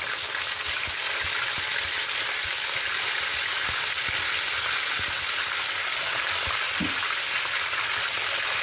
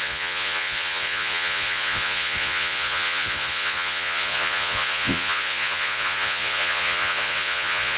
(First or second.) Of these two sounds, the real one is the first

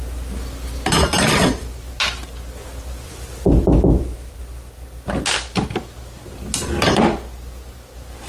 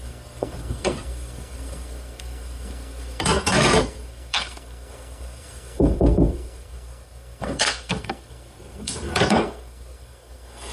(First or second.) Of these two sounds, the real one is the first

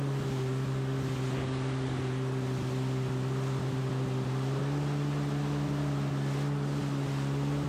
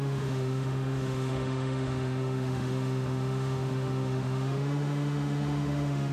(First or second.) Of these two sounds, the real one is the first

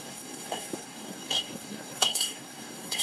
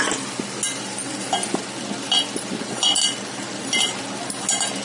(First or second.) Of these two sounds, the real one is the second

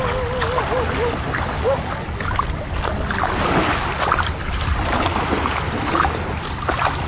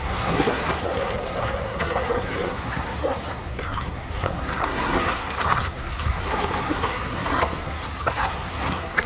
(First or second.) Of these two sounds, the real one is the first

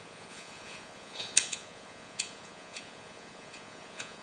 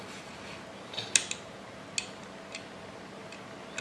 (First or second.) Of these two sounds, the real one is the second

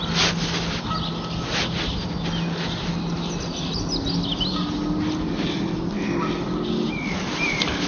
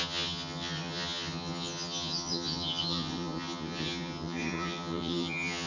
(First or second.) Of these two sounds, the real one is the first